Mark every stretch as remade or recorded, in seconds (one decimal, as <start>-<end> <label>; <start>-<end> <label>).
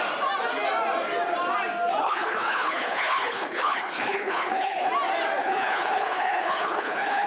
0.0-2.0 recorded; 2.0-4.9 remade; 4.9-5.4 recorded; 5.4-7.3 remade